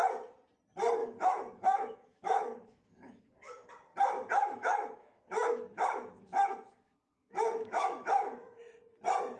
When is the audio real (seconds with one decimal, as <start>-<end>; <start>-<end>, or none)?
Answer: 0.0-1.0; 3.7-4.4; 8.6-9.4